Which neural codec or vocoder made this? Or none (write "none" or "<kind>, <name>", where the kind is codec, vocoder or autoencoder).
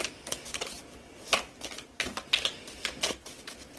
none